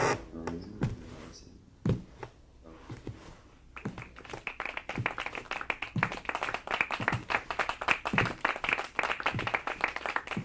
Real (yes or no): yes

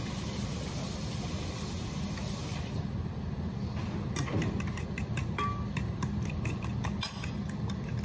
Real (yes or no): yes